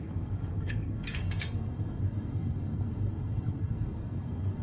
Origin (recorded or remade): remade